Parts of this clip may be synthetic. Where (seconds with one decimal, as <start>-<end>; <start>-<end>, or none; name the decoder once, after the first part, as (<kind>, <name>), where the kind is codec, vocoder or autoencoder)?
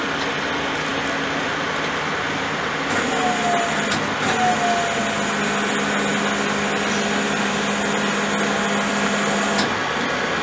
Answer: none